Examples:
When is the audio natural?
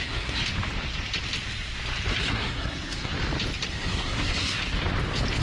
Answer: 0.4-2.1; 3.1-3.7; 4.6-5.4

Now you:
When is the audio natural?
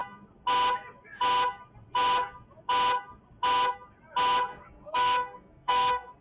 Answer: 0.0-4.5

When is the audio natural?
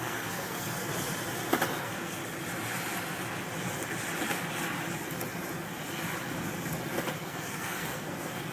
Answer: 0.9-1.8; 2.2-7.2